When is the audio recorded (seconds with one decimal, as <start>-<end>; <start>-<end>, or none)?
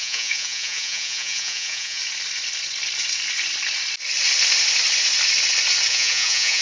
2.0-5.9